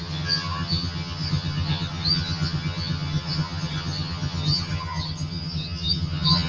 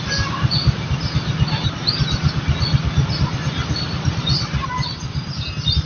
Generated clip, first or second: first